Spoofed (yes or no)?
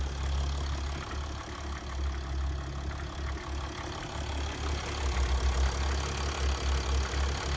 no